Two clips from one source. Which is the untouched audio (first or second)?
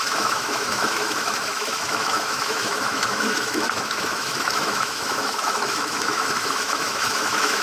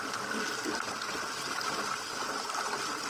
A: second